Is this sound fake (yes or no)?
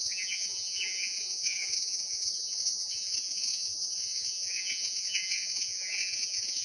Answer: yes